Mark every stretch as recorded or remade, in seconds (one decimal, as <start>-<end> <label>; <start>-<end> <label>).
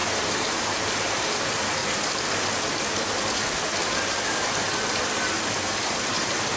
0.0-1.8 remade; 1.8-5.5 recorded; 5.5-6.6 remade